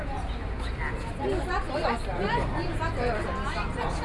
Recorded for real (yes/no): yes